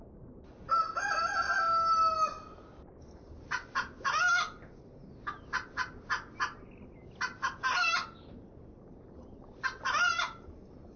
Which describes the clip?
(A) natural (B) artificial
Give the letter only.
A